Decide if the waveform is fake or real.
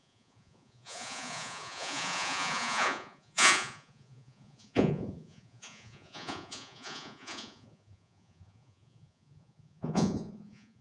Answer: fake